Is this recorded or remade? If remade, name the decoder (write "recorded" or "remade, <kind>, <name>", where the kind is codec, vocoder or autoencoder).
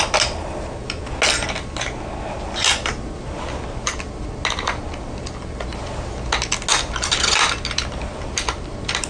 recorded